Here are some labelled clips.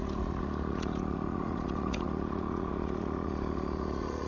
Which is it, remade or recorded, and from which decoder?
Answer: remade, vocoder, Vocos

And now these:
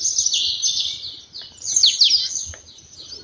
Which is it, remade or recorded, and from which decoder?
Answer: recorded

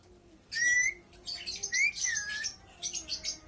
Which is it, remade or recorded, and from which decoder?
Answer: recorded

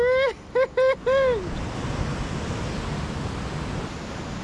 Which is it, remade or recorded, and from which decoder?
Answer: recorded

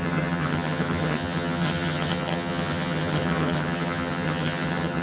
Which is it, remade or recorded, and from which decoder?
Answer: remade, vocoder, HiFi-GAN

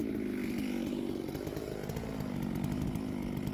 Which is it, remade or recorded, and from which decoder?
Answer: remade, vocoder, BigVGAN v2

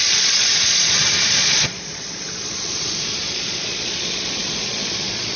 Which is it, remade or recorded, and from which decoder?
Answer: remade, vocoder, Vocos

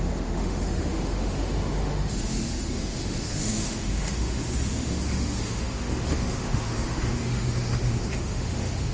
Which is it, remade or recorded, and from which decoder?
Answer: remade, autoencoder, DAC-VAE